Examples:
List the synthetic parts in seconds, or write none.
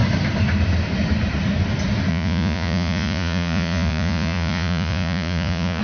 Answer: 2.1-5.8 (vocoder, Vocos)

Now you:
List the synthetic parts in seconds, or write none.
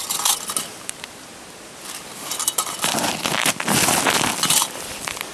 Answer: 0.0-1.3 (vocoder, BigVGAN v2); 4.5-5.3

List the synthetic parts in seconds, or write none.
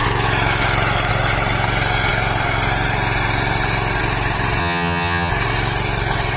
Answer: 4.6-5.3 (vocoder, HiFi-GAN)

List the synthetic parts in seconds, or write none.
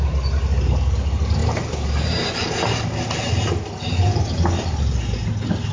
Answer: none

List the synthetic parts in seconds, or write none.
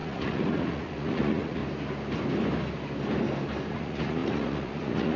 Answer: 0.0-1.6 (vocoder, Vocos); 3.7-5.2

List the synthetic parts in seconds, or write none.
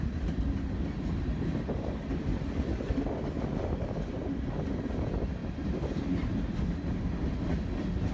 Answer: none